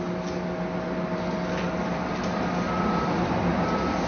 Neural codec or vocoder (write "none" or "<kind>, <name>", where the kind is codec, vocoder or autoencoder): none